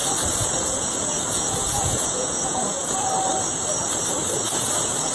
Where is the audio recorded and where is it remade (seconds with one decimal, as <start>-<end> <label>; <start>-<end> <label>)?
0.0-3.1 remade; 3.1-4.3 recorded; 4.3-5.1 remade